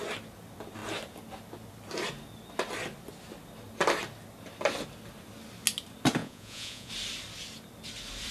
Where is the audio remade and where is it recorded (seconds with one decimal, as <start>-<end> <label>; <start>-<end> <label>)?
0.0-6.2 recorded; 6.2-6.9 remade; 6.9-8.3 recorded